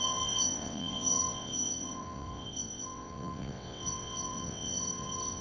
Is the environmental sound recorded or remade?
remade